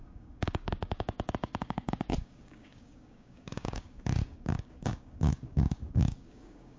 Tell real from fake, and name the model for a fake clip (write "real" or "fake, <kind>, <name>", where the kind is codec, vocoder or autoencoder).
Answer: fake, codec, DAC